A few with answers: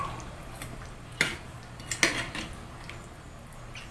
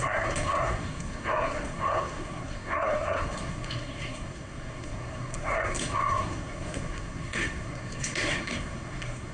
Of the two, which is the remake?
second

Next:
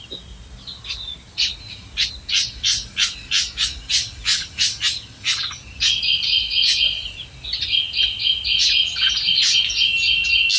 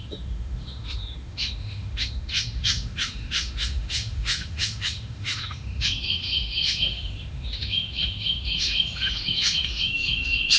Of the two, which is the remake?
second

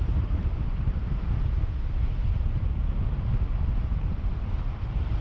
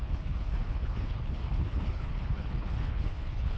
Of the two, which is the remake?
second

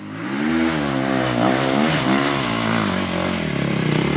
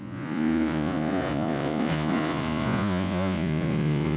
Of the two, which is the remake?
second